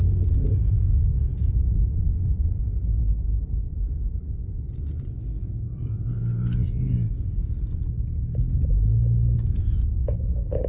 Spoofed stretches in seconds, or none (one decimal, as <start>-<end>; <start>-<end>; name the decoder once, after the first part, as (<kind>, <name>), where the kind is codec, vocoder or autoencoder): 1.9-2.6 (vocoder, Vocos); 3.6-5.2